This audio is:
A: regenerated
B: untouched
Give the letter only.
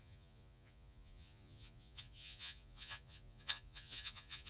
A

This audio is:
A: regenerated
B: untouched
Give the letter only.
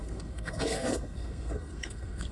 A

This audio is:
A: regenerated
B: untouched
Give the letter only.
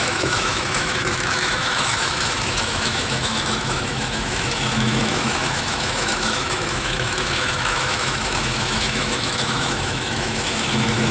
A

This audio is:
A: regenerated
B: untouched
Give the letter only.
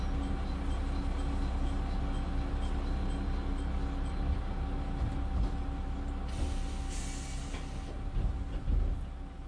B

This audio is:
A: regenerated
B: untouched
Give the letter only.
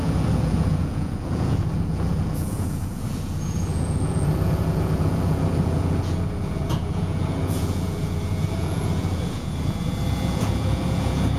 A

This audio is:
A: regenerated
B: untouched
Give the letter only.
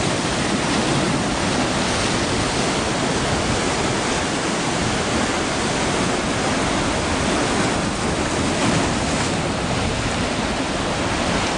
B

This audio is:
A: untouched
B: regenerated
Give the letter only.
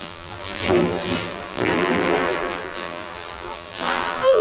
B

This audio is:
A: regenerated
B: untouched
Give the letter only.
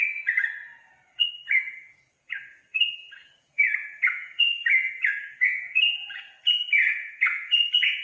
A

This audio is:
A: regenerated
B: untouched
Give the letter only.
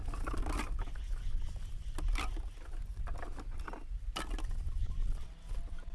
B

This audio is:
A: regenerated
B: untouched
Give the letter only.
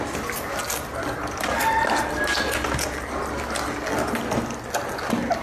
B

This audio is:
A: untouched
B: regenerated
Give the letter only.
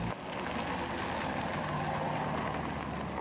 A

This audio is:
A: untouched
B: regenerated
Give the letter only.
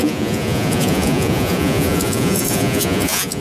B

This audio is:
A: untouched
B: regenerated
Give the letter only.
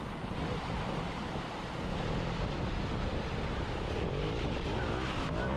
A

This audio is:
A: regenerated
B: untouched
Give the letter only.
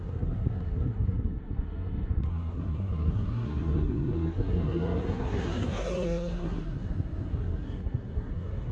A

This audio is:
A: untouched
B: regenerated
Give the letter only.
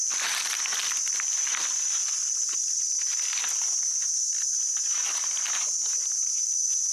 A